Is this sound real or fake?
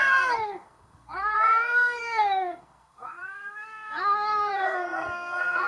fake